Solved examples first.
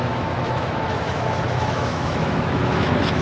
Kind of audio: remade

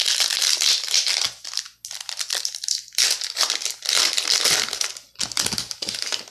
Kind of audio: recorded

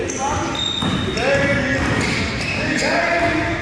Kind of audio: recorded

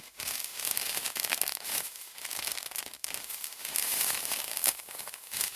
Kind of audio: remade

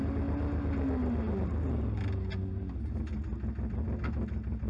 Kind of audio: recorded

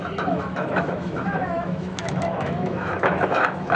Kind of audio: remade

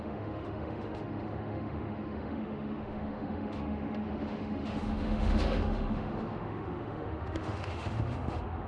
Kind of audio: remade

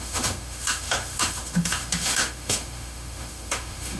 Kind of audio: remade